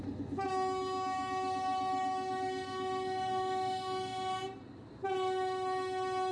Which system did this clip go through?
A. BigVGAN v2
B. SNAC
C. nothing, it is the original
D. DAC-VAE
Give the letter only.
C